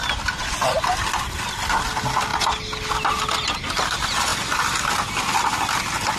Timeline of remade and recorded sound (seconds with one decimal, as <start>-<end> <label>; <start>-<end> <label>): 0.0-6.2 recorded